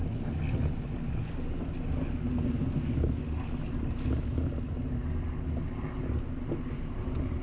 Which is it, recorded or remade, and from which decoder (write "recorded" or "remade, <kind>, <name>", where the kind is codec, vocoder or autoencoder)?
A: recorded